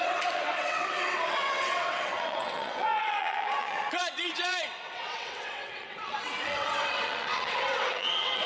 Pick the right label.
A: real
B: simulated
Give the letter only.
B